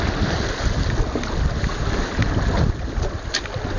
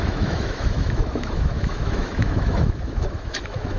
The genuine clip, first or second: first